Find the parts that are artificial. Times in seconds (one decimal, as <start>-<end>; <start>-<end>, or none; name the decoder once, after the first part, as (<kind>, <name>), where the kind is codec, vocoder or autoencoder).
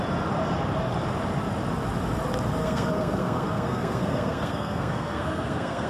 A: 2.6-5.9 (codec, SNAC)